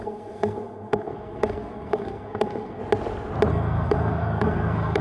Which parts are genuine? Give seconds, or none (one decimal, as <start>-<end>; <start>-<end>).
2.8-3.5